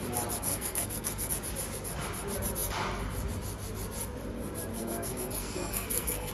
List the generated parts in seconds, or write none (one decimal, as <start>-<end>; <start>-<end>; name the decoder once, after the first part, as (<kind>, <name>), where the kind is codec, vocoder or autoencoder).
0.5-1.3 (codec, SNAC); 4.7-6.3